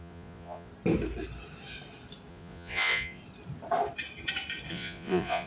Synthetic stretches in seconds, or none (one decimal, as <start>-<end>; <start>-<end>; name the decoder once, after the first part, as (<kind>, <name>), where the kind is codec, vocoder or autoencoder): 0.0-0.7 (vocoder, Vocos); 2.3-3.2; 4.7-5.5